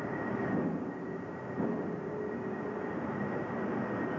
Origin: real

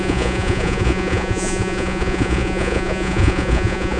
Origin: fake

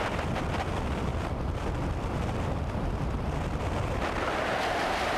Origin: real